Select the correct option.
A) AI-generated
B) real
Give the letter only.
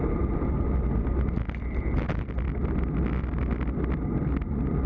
B